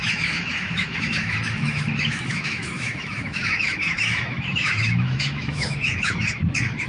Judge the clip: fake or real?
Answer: fake